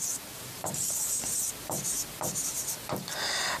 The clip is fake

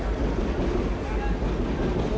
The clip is real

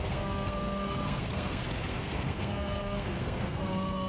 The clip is fake